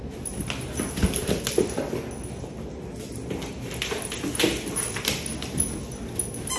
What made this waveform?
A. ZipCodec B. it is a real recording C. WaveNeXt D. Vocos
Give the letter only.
B